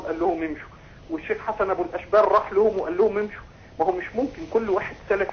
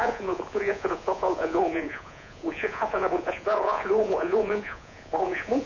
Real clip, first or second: first